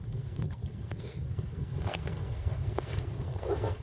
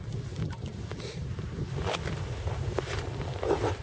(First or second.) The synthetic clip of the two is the first